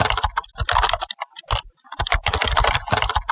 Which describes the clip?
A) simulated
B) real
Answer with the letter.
B